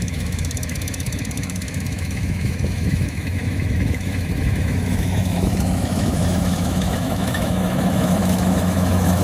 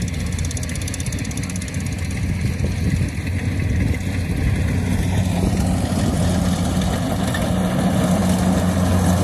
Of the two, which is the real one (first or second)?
second